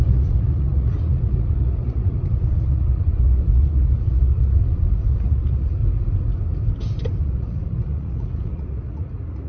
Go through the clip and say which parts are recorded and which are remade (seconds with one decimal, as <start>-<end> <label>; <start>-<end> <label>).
0.0-5.8 remade; 5.8-7.2 recorded; 7.2-9.5 remade